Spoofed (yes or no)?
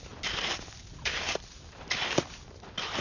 no